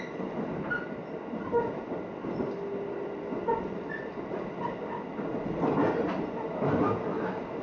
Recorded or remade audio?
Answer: recorded